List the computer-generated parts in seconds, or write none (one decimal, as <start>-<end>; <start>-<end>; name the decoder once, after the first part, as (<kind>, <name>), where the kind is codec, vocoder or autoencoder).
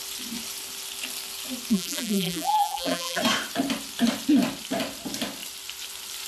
1.7-3.2 (vocoder, BigVGAN v2)